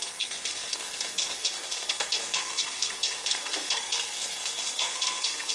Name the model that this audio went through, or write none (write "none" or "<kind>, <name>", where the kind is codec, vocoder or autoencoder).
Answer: codec, SNAC